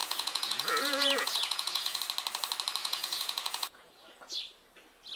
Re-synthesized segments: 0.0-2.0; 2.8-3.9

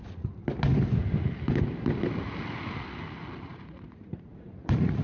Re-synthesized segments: 0.0-0.4; 3.4-5.0

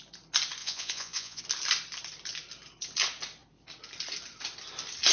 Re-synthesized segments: 0.6-1.4

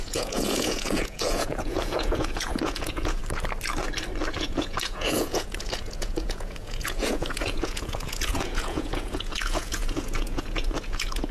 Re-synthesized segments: 0.0-3.2; 4.3-11.3

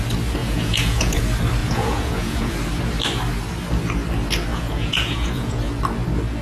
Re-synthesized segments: 0.4-1.2; 1.6-2.5; 4.5-5.6